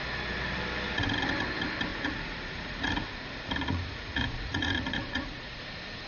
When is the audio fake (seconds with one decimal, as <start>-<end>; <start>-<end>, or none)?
1.9-5.6